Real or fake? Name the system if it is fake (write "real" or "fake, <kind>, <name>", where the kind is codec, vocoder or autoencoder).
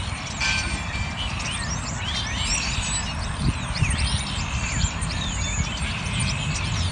real